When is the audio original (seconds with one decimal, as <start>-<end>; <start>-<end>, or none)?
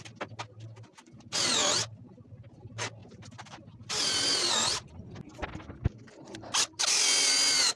0.0-7.8